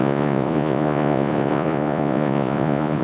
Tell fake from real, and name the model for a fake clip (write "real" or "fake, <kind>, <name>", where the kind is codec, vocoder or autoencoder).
fake, vocoder, Vocos